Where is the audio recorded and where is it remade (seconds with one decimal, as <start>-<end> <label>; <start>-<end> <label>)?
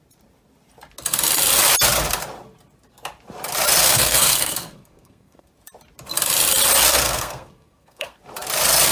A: 0.0-3.8 recorded; 3.8-5.5 remade; 5.5-6.9 recorded; 6.9-8.2 remade; 8.2-8.9 recorded